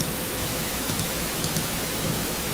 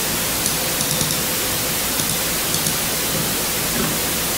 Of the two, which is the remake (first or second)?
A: first